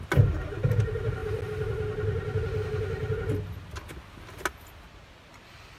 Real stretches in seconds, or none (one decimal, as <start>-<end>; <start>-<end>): 0.0-5.8